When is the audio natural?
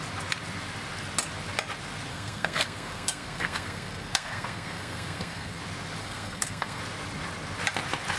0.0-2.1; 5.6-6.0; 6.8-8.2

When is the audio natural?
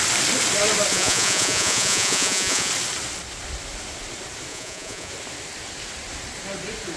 0.0-0.9; 2.7-4.5; 5.1-7.0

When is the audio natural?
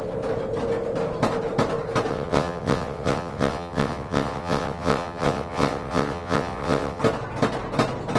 0.0-2.1; 7.0-8.2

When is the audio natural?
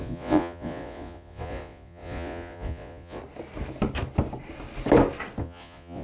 3.2-5.4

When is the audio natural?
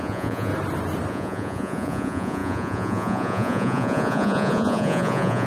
0.5-1.1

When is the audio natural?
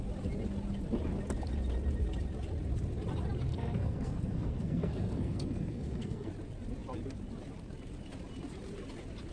0.0-3.5; 6.3-9.3